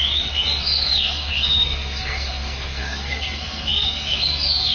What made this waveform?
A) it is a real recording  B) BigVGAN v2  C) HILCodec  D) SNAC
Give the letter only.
D